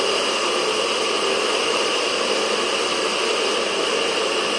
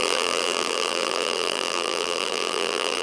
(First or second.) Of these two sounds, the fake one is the second